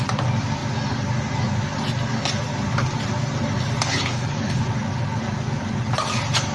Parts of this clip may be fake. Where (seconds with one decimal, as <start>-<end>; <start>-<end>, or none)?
3.9-4.6